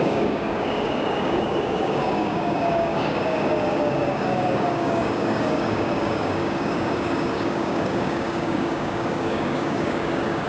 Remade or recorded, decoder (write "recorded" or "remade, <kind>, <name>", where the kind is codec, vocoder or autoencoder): remade, codec, DAC